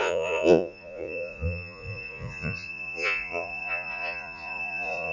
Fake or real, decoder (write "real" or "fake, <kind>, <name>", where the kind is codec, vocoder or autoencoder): fake, vocoder, Vocos